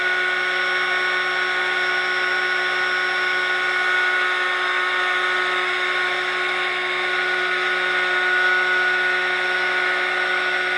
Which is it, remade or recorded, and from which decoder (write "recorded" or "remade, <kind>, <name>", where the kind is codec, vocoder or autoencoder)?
recorded